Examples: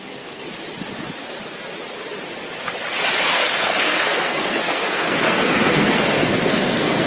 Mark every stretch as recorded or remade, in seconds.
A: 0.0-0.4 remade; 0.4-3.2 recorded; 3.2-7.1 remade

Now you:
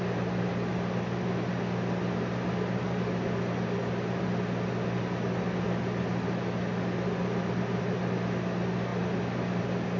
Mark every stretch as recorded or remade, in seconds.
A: 0.0-10.0 recorded

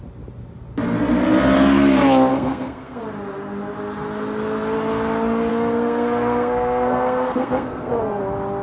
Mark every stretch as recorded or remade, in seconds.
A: 0.0-2.3 recorded; 2.3-3.0 remade; 3.0-5.5 recorded; 5.5-8.2 remade; 8.2-8.6 recorded

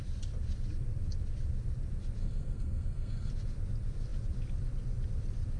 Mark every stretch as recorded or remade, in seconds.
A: 0.0-2.2 recorded; 2.2-3.3 remade; 3.3-5.6 recorded

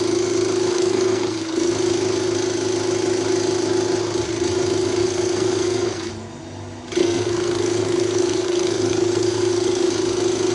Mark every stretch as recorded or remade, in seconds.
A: 0.0-0.7 recorded; 0.7-1.7 remade; 1.7-5.0 recorded; 5.0-6.1 remade; 6.1-7.0 recorded; 7.0-9.9 remade; 9.9-10.5 recorded

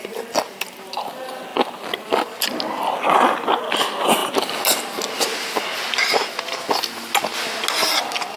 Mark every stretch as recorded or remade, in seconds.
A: 0.0-8.4 recorded